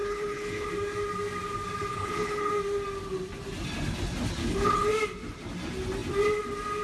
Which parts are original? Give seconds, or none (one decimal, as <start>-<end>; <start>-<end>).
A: 0.7-1.9; 2.5-4.4; 4.9-6.8